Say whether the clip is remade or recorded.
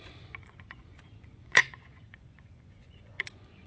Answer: remade